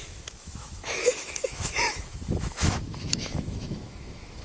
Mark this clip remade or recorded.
remade